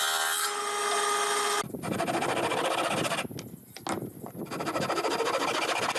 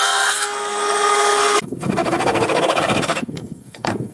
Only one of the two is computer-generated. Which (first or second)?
second